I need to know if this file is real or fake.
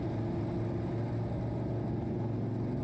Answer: real